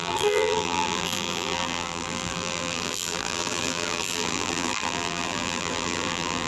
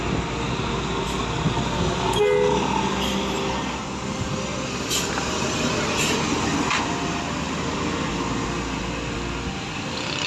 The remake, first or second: first